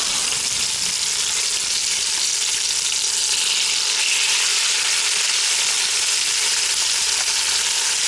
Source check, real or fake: real